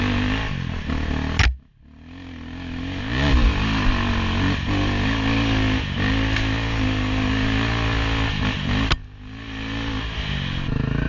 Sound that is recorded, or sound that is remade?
recorded